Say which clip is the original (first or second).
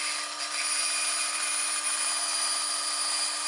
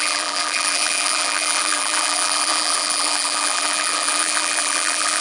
first